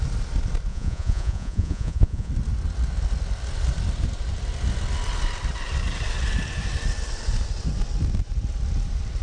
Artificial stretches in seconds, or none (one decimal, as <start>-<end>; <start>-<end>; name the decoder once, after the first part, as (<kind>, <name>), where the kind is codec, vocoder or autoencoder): 0.7-2.3 (vocoder, Vocos)